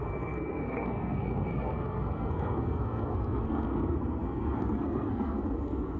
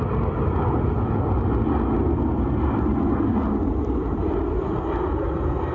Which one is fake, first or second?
first